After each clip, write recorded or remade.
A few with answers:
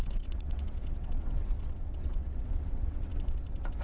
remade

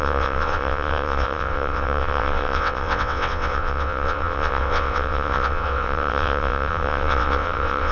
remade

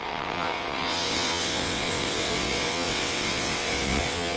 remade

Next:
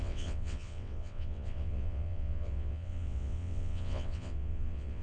remade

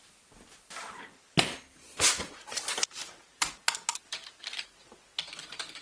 recorded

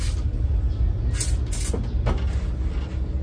recorded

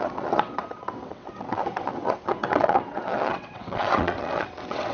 remade